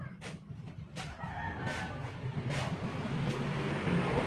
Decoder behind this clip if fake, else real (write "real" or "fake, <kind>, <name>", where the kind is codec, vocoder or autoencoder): real